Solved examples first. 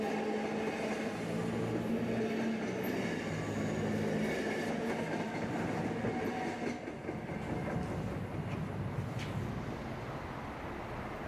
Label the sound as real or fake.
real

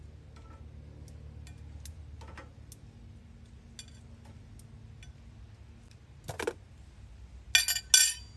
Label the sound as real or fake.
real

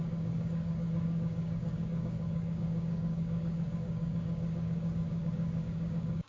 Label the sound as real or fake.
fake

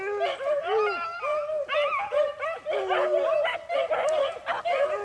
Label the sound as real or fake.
real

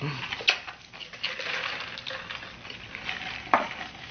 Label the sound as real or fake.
real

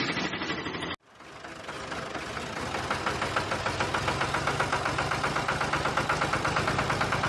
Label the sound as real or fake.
real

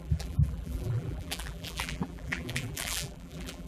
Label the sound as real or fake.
fake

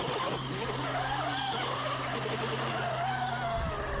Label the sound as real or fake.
real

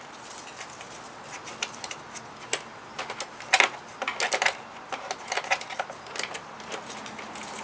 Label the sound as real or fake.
real